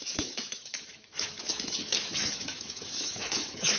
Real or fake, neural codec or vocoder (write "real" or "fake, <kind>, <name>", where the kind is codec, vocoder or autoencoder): fake, autoencoder, DAC-VAE